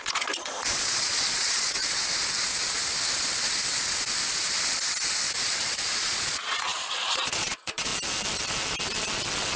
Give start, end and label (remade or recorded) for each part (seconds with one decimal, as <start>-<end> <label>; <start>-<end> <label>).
0.0-1.8 remade; 1.8-5.4 recorded; 5.4-7.9 remade; 7.9-9.6 recorded